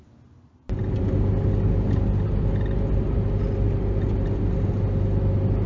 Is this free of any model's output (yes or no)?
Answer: yes